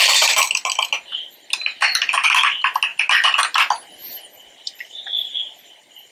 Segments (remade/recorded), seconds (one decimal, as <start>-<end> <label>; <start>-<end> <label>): 0.0-6.1 recorded